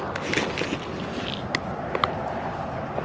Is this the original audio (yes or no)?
yes